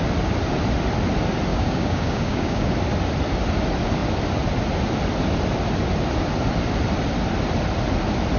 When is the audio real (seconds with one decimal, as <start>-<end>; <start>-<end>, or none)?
0.0-1.5; 2.7-8.4